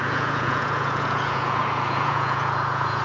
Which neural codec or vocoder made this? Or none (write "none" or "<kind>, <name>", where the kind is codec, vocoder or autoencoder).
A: vocoder, Vocos